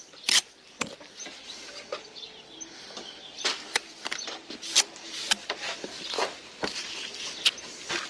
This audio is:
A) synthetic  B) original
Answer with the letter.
B